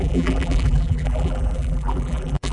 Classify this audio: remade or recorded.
remade